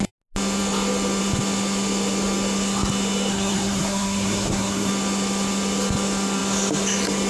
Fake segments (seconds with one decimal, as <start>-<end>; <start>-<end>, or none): 3.3-4.9